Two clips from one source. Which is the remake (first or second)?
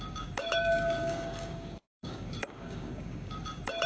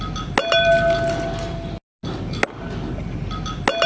first